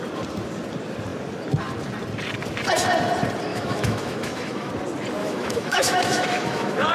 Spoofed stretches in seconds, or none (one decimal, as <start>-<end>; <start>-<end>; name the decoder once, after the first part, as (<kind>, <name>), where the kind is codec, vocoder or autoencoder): 3.5-4.7 (autoencoder, DAC-VAE); 5.2-6.9